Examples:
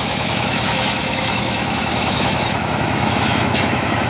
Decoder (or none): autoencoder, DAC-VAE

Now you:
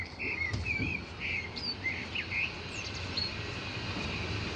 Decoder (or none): none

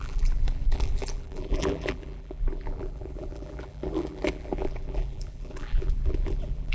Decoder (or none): vocoder, BigVGAN v2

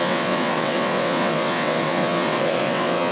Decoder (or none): vocoder, WaveNeXt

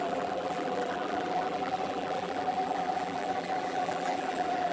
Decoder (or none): vocoder, BigVGAN v2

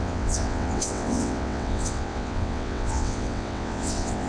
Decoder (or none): vocoder, WaveNeXt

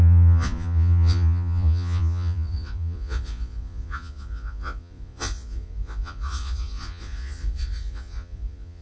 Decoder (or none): vocoder, Vocos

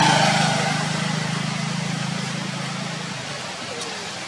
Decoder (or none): none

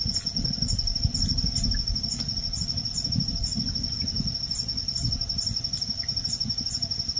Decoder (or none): none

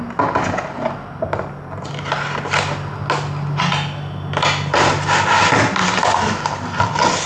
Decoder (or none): none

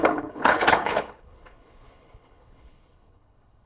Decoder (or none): codec, HILCodec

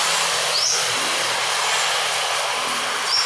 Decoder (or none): none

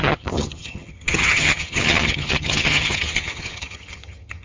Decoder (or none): vocoder, HiFi-GAN